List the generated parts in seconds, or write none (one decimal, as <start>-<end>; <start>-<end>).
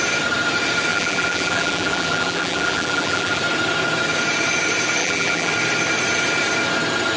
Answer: 0.9-3.4; 5.0-5.5